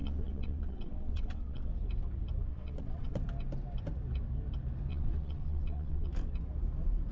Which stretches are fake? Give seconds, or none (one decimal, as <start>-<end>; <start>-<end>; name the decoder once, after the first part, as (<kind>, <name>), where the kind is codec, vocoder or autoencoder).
0.0-1.7 (vocoder, WaveNeXt); 2.5-3.2; 4.9-6.1